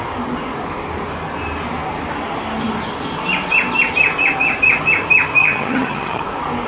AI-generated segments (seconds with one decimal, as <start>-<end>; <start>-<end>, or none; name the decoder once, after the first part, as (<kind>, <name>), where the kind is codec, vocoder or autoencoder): 5.4-6.2 (vocoder, HiFi-GAN)